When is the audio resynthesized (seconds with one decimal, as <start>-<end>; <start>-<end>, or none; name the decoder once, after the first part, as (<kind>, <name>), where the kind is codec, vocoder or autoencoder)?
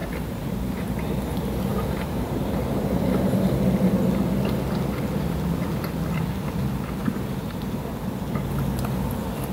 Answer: 0.0-1.0 (vocoder, BigVGAN v2); 1.7-3.4; 7.0-8.2